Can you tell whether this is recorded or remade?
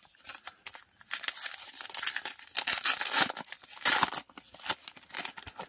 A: recorded